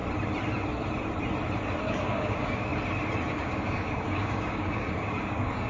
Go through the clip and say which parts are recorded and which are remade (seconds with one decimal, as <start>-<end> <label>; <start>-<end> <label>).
0.0-1.8 recorded; 1.8-2.7 remade; 2.7-3.3 recorded; 3.3-5.7 remade